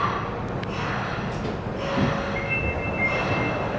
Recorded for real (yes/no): yes